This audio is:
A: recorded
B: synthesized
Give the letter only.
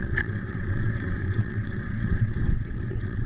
B